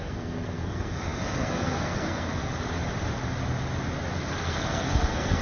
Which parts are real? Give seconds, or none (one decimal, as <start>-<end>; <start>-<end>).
2.5-4.3